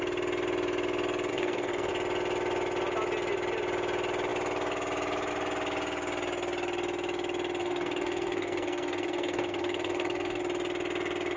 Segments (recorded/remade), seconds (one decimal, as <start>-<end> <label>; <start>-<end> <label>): 0.0-1.3 recorded; 1.3-1.9 remade; 1.9-7.6 recorded; 7.6-10.4 remade; 10.4-11.4 recorded